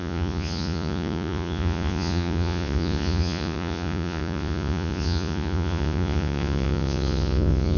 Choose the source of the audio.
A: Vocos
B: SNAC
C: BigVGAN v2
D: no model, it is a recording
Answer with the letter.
A